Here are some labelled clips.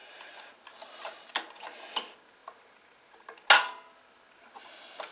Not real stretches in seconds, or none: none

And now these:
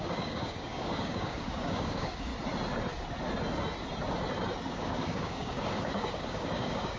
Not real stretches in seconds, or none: 0.0-2.3 (codec, DAC); 4.7-7.0

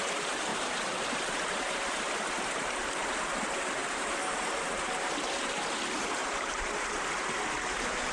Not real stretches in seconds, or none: 0.5-1.5 (vocoder, BigVGAN v2); 3.8-5.1; 6.2-6.7

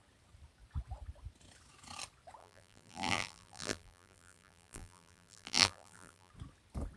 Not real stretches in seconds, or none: 2.4-6.3 (vocoder, BigVGAN v2)

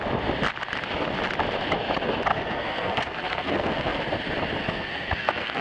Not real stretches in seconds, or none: 2.3-4.0 (codec, SNAC); 4.6-5.6

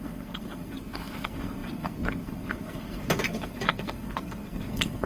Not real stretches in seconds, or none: 0.0-5.1 (codec, SNAC)